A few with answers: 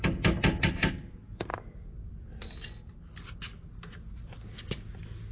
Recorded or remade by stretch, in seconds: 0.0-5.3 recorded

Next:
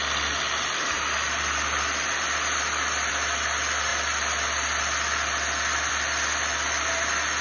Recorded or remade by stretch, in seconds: 0.0-7.4 recorded